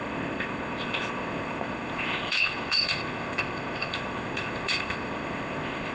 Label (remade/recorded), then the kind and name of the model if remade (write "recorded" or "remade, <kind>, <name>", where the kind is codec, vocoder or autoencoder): remade, codec, ZipCodec